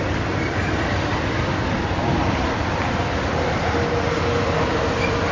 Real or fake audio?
real